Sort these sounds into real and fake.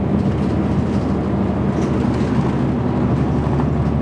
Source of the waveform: real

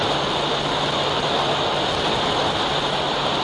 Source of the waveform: real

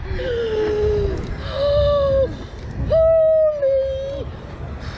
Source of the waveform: real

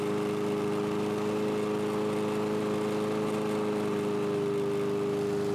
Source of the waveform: real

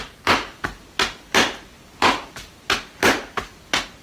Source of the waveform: real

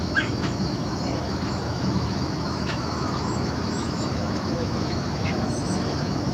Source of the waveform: fake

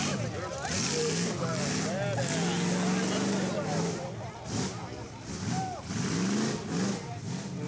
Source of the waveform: real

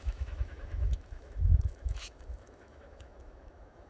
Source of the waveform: fake